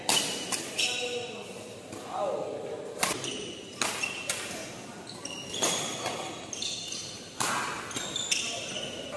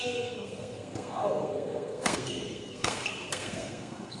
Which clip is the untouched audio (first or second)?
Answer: first